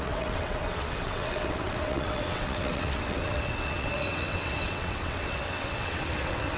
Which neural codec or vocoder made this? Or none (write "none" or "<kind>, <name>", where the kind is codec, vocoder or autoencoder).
vocoder, WaveNeXt